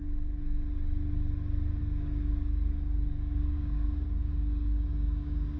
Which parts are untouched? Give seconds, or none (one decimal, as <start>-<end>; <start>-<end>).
0.0-1.8